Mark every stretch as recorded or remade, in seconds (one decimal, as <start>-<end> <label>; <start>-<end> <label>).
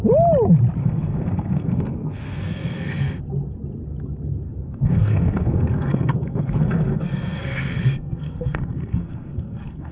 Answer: 0.0-0.8 recorded; 0.8-3.2 remade; 3.2-4.5 recorded; 4.5-9.9 remade